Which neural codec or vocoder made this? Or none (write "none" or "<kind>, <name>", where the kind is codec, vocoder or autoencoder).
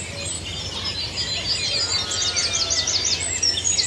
none